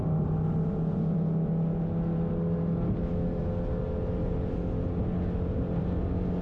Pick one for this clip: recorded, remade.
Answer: recorded